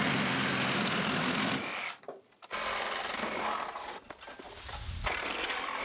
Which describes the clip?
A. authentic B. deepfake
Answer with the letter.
A